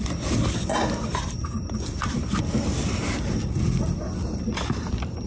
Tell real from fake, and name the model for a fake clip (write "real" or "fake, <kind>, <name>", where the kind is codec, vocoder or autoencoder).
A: real